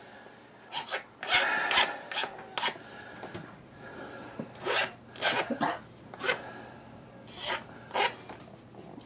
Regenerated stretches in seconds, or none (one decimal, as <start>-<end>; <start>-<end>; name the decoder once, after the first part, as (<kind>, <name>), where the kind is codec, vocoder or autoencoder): 3.4-4.0 (vocoder, Vocos)